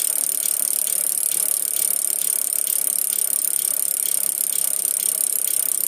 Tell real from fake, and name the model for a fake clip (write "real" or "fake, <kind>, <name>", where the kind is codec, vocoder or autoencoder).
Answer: real